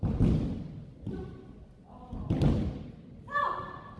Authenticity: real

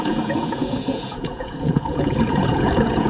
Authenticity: fake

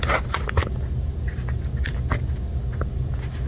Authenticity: real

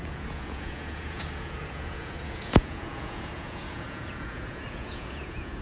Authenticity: fake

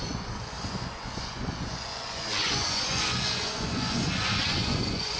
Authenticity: fake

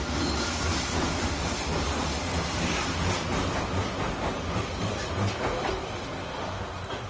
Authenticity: real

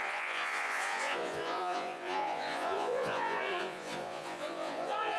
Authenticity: fake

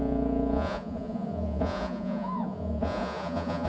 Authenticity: fake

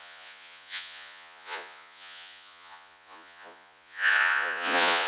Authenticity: fake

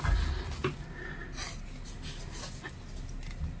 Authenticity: real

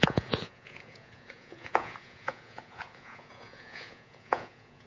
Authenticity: fake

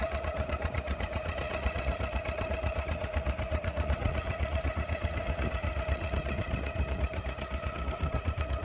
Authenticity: fake